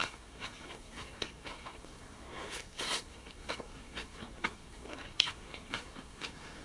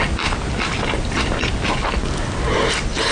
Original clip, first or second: second